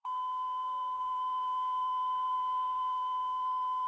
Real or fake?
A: fake